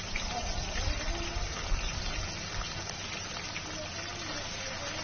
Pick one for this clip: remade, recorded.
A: recorded